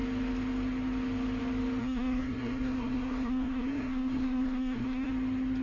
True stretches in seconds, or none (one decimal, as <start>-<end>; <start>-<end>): 0.0-1.8; 5.1-5.6